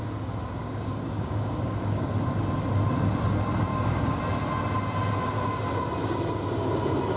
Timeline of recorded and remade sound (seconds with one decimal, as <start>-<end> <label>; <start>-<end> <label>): 0.0-0.6 recorded; 0.6-2.1 remade; 2.1-3.7 recorded; 3.7-4.2 remade; 4.2-7.2 recorded